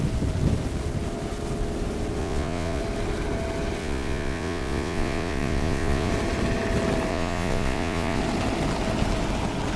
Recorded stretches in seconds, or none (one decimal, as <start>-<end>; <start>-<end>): 0.0-2.2; 2.8-3.8; 6.1-7.1; 8.2-9.8